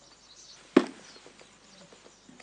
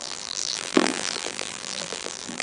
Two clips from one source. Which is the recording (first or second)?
first